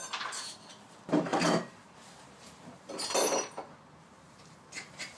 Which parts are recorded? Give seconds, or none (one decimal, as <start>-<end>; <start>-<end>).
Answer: 0.0-5.2